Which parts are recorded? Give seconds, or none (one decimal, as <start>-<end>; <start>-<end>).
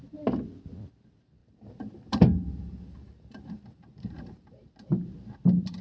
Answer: 0.0-1.4; 4.7-5.8